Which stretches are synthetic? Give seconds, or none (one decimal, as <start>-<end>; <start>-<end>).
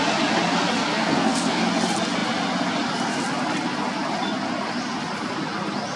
0.9-1.6